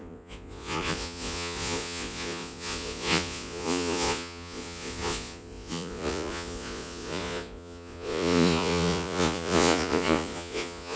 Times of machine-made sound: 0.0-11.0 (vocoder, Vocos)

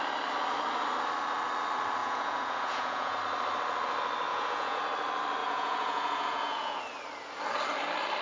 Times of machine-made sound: 2.0-3.2 (vocoder, Vocos); 4.3-4.8; 5.4-6.8

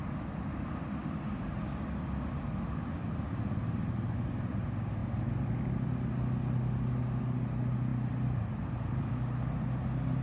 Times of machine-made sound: none